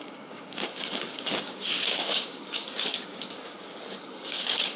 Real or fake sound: fake